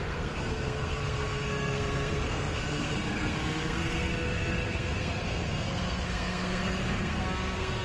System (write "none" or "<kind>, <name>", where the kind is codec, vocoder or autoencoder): codec, SNAC